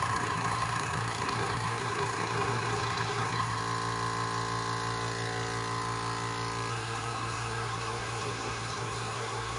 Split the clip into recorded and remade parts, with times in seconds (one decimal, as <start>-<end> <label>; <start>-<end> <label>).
0.0-3.6 remade; 3.6-6.7 recorded; 6.7-9.6 remade